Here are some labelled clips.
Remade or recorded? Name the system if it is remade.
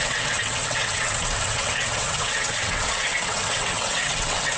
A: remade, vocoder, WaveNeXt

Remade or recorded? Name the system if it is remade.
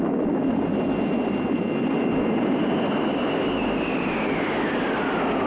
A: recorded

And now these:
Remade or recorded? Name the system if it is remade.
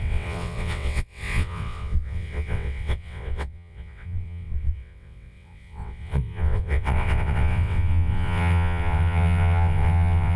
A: remade, vocoder, WaveNeXt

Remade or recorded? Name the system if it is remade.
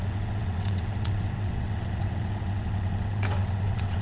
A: remade, vocoder, WaveNeXt